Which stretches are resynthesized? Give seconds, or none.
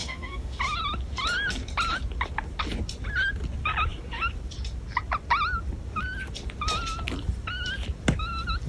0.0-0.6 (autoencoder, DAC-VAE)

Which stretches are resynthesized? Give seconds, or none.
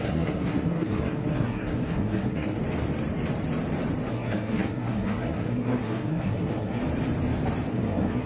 0.0-2.6 (codec, SNAC); 4.1-6.8; 7.7-8.3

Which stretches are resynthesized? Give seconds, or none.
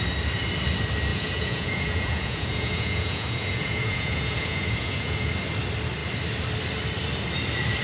1.1-5.3 (vocoder, Vocos)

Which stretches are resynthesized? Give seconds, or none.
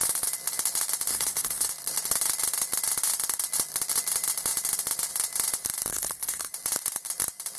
1.1-1.7 (codec, SNAC); 5.9-6.5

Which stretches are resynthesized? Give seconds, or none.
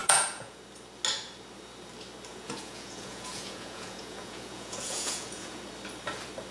0.0-0.6 (vocoder, Vocos); 2.3-5.6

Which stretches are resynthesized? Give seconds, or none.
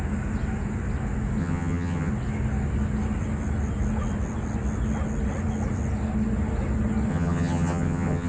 1.4-2.1 (vocoder, HiFi-GAN); 7.1-8.3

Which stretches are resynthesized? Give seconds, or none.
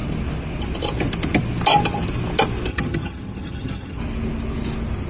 2.7-4.0 (vocoder, HiFi-GAN)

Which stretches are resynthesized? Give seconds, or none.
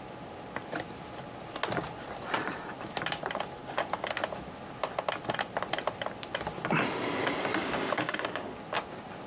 3.6-4.1 (codec, DAC); 7.6-8.6